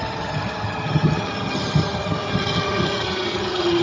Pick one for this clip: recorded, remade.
remade